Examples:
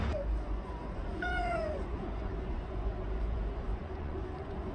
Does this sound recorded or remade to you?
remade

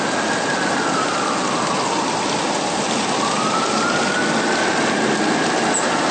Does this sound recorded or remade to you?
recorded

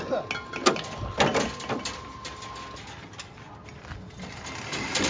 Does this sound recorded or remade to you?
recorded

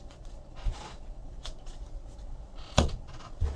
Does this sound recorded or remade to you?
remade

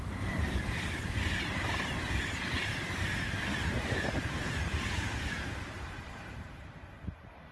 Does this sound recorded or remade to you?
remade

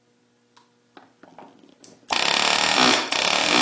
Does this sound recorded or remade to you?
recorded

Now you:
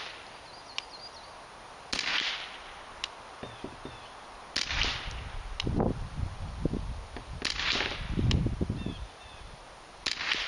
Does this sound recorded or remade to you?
recorded